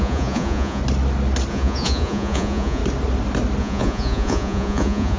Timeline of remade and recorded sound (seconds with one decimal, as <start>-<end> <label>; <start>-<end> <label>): 0.0-0.8 remade; 0.8-1.5 recorded; 1.5-2.8 remade; 2.8-3.6 recorded; 3.6-5.2 remade